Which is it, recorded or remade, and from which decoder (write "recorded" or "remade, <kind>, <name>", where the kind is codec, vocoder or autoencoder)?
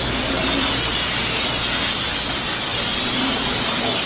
recorded